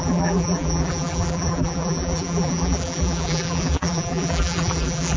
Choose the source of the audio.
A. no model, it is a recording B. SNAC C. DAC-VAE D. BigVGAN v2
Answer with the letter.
D